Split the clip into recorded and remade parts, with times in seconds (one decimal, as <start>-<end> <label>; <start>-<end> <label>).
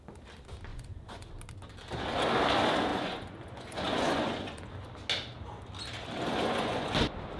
0.0-0.7 recorded; 0.7-1.3 remade; 1.3-2.9 recorded; 2.9-4.7 remade; 4.7-6.3 recorded; 6.3-6.9 remade; 6.9-7.4 recorded